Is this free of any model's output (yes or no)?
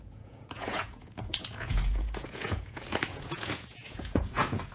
no